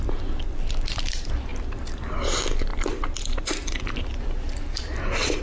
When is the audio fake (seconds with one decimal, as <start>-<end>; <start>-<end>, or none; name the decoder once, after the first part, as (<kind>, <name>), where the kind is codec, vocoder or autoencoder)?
none